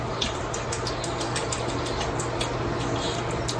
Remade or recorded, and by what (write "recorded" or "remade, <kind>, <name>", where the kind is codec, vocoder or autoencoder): recorded